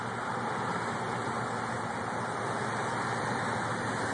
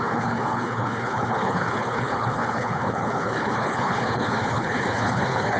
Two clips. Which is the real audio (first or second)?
first